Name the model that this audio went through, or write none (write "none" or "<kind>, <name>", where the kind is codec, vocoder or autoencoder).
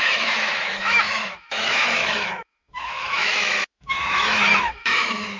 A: autoencoder, DAC-VAE